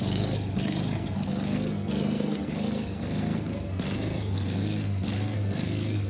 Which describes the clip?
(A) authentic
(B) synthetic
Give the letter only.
B